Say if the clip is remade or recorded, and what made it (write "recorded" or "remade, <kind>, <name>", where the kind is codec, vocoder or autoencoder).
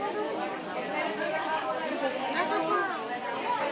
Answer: recorded